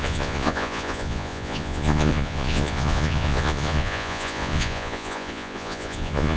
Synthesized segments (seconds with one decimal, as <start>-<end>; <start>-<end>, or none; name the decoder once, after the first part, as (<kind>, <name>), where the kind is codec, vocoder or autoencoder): 0.0-6.4 (vocoder, Vocos)